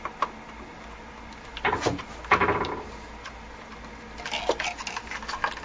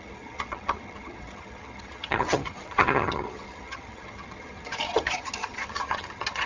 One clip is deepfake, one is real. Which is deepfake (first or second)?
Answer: second